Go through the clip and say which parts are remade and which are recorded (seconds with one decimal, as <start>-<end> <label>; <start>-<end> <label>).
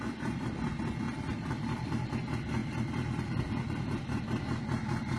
0.0-1.3 recorded; 1.3-2.2 remade; 2.2-2.6 recorded; 2.6-4.2 remade; 4.2-5.2 recorded